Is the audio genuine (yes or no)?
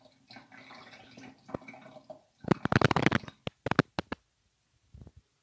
yes